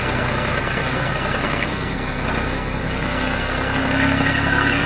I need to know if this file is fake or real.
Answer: fake